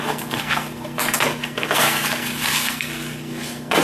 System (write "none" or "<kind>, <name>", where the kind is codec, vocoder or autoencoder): codec, SNAC